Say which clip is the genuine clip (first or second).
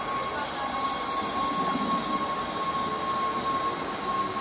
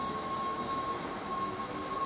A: first